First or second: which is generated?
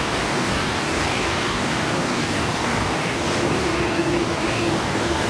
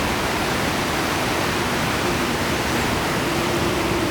first